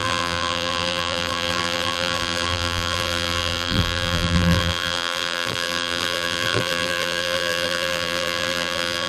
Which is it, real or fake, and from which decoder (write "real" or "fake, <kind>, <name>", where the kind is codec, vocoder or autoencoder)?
fake, vocoder, BigVGAN v2